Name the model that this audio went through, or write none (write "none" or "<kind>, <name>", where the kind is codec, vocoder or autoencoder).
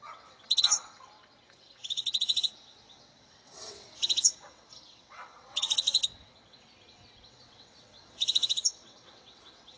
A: vocoder, WaveNeXt